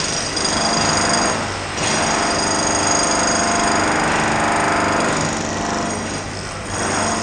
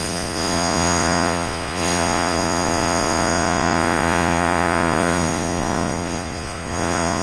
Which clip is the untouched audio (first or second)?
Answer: first